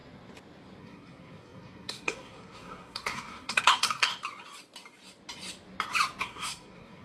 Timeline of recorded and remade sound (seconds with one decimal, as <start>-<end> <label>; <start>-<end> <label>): 0.0-0.8 recorded; 0.8-4.1 remade; 4.1-6.2 recorded; 6.2-7.0 remade